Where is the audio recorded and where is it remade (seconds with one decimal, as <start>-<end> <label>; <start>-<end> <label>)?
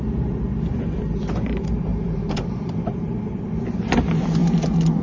0.0-4.4 remade; 4.4-5.0 recorded